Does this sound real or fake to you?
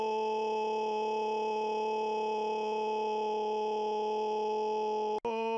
real